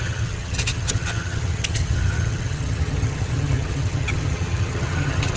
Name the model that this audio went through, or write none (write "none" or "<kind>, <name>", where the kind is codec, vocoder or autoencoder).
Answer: vocoder, HiFi-GAN